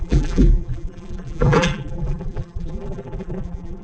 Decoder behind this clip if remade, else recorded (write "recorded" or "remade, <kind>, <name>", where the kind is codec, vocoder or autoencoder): remade, vocoder, BigVGAN v2